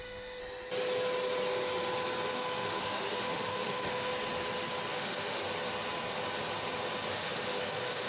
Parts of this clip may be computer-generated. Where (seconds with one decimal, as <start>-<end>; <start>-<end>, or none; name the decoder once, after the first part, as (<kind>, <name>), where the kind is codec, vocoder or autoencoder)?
0.0-0.4 (autoencoder, DAC-VAE); 2.3-4.1; 4.9-5.4; 7.1-8.1